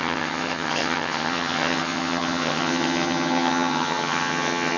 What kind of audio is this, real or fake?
fake